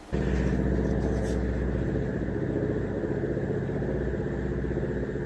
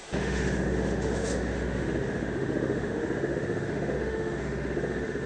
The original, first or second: first